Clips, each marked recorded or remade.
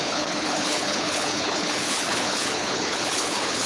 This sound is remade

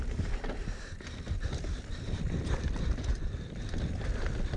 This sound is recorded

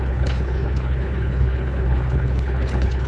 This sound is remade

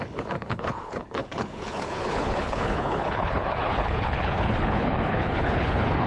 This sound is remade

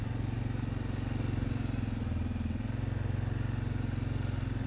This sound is recorded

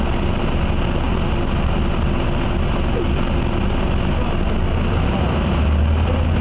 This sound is recorded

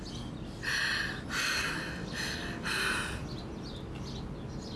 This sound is recorded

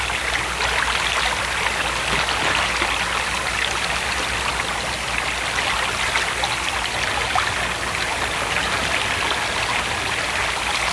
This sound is recorded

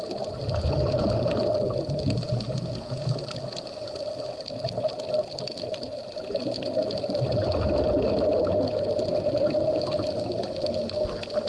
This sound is recorded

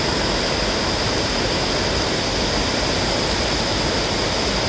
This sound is recorded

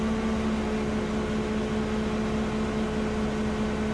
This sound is recorded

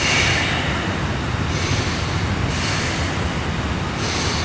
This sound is recorded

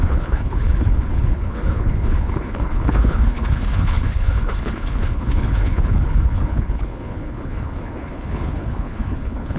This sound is remade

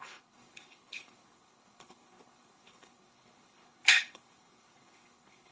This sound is remade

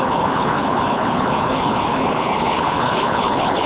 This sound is remade